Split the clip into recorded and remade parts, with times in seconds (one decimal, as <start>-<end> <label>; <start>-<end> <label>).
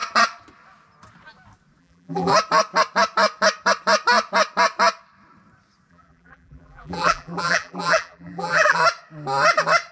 0.0-1.8 recorded; 1.8-2.3 remade; 2.3-5.9 recorded; 5.9-8.8 remade; 8.8-9.9 recorded